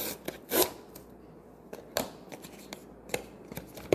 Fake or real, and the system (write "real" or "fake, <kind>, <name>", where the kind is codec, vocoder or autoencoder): real